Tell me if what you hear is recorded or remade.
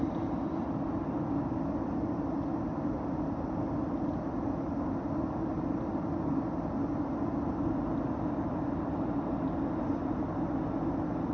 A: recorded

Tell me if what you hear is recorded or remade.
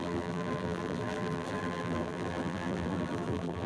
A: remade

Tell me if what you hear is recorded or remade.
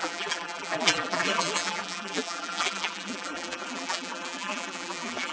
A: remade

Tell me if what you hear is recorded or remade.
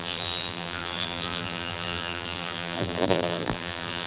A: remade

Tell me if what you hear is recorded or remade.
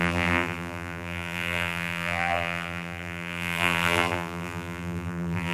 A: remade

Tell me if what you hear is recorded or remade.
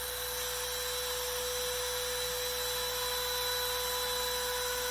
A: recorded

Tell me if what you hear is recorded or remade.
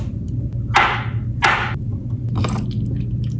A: recorded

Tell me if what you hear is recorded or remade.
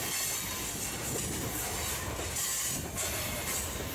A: recorded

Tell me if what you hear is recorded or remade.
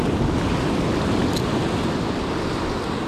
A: recorded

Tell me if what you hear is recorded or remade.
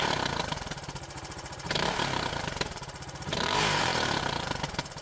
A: remade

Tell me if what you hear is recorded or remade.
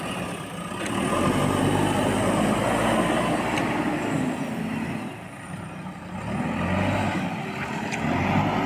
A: recorded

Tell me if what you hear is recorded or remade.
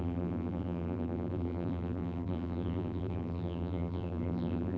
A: remade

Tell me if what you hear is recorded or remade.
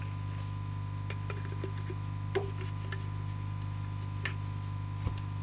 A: recorded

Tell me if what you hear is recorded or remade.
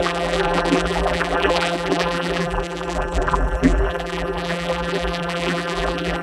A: remade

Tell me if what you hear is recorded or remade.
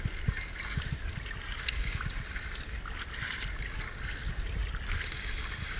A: recorded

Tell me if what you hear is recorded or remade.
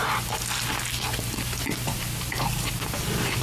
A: recorded